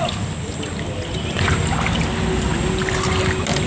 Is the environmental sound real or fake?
real